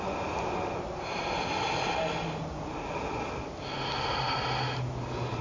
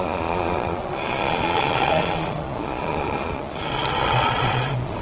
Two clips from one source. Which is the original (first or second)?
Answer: first